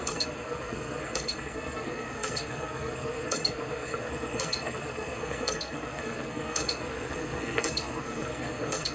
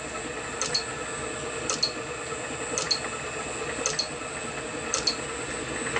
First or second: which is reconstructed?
first